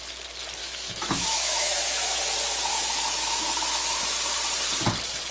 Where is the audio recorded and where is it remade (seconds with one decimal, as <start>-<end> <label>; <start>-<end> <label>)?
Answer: 0.0-0.6 recorded; 0.6-2.2 remade; 2.2-2.7 recorded; 2.7-4.0 remade; 4.0-5.3 recorded